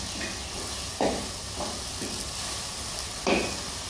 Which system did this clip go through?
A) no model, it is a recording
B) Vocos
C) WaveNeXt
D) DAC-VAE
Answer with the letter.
A